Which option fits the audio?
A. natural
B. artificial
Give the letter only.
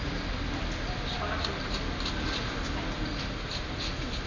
A